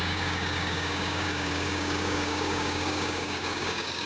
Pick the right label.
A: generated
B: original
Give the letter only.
A